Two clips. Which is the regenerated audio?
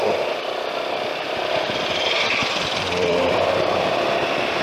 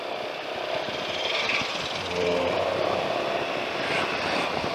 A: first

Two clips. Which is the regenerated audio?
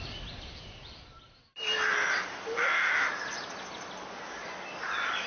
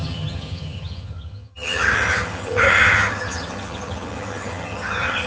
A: second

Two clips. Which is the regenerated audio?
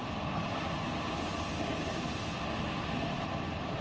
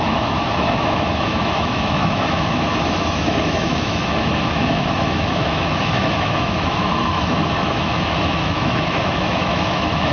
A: second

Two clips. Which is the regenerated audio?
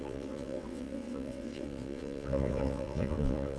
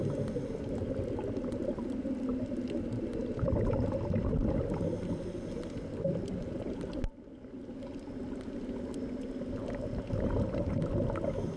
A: first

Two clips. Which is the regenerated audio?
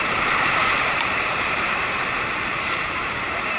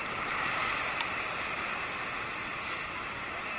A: first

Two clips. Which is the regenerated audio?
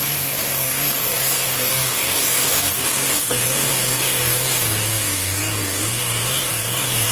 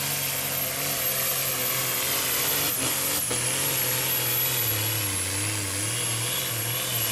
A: first